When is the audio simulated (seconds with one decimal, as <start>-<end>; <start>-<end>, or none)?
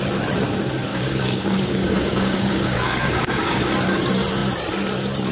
0.9-3.7